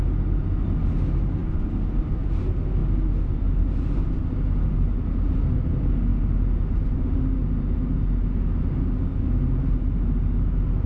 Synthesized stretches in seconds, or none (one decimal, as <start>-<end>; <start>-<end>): none